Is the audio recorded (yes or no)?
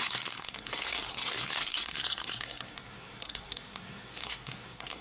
no